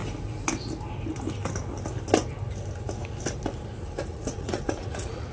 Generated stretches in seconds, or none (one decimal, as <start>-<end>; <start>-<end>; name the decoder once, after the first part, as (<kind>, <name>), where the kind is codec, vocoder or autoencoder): 4.1-5.3 (vocoder, Vocos)